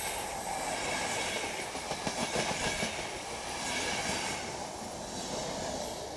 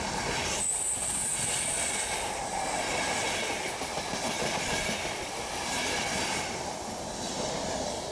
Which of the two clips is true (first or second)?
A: first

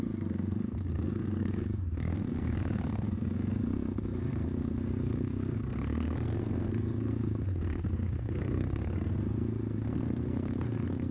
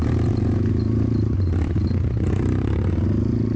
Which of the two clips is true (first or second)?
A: second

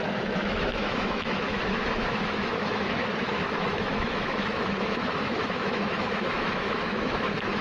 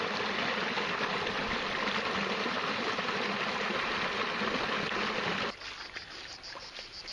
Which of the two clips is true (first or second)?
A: second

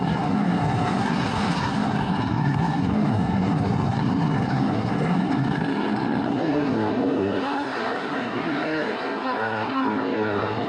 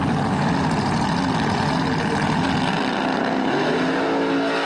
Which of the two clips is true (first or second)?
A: second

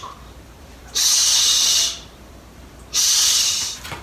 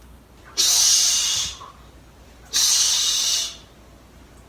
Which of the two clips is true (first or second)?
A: second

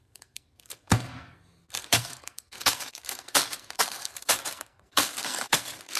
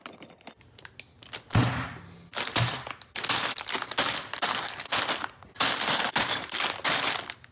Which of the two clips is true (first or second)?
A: second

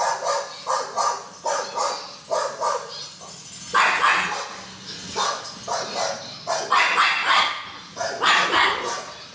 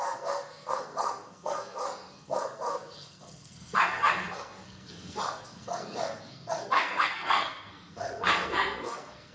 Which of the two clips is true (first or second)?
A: first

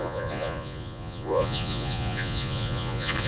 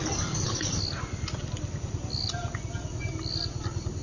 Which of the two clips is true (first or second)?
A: second